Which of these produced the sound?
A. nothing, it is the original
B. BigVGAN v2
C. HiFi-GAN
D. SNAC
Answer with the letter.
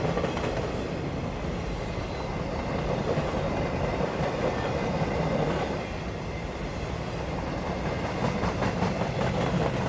A